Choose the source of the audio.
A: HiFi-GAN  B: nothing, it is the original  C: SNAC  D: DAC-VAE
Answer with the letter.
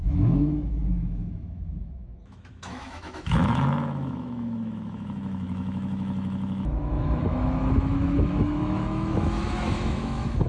D